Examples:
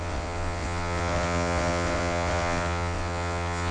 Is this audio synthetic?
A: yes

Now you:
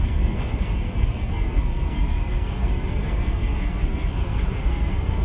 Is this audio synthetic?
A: yes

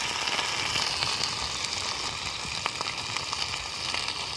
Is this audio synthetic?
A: no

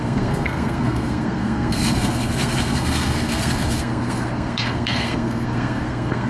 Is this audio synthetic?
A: yes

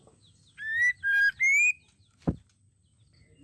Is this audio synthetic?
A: no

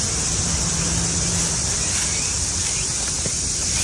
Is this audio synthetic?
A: no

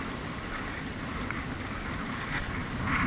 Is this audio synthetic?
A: no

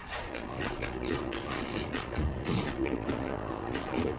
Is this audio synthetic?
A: yes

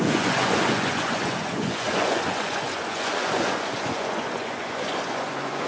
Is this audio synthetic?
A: yes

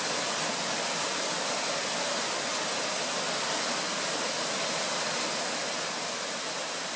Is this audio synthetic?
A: no